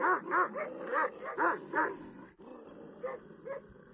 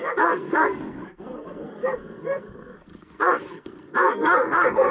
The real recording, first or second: first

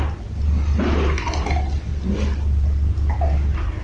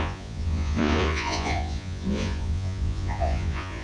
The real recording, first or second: first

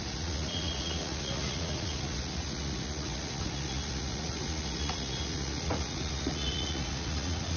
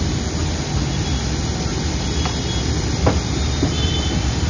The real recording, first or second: second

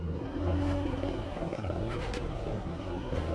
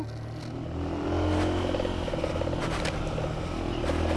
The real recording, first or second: second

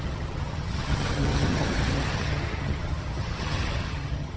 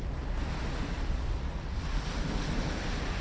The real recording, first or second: second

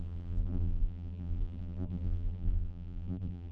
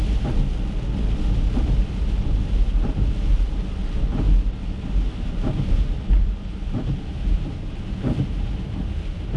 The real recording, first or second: second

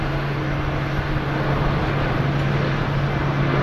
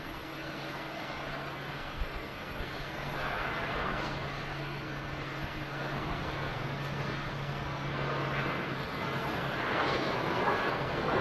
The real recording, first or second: first